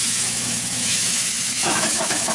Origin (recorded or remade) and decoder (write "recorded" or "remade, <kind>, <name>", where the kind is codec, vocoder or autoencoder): remade, autoencoder, DAC-VAE